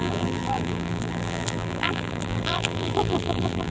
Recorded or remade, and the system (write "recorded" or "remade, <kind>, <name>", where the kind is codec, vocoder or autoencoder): remade, vocoder, BigVGAN v2